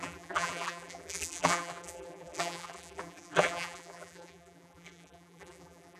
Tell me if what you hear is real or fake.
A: fake